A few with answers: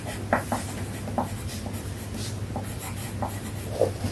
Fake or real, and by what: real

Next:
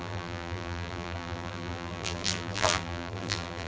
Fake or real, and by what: fake, vocoder, BigVGAN v2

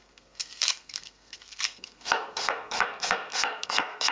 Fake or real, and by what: fake, codec, SNAC